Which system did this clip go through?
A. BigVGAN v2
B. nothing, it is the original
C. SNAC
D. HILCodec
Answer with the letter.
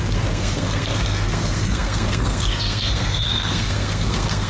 C